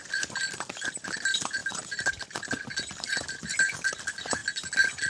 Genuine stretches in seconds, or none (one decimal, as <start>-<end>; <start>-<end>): 0.0-5.1